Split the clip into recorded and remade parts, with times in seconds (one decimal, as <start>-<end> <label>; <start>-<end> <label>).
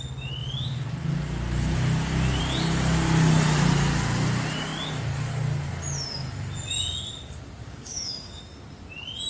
0.0-7.6 recorded; 7.6-8.4 remade; 8.4-9.3 recorded